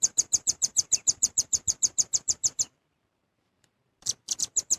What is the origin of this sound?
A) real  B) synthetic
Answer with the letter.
B